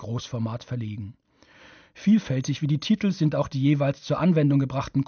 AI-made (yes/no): no